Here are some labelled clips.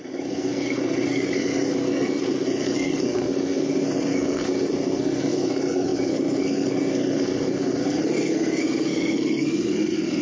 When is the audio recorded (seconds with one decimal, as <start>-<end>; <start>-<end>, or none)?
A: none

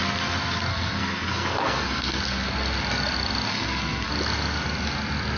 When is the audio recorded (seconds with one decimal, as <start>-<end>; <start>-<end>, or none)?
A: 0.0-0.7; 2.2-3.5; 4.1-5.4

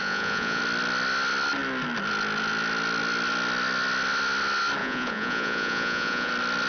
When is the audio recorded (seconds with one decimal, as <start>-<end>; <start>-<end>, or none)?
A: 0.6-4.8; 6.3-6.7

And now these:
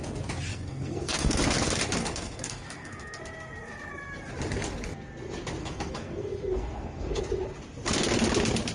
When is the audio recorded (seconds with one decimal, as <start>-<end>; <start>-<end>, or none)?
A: 0.0-0.5; 1.4-2.0; 3.2-5.6; 7.2-8.7

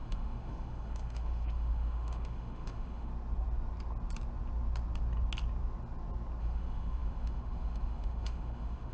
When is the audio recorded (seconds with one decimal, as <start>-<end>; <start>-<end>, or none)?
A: 3.1-6.4